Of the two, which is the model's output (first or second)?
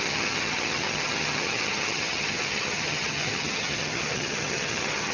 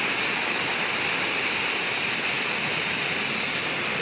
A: first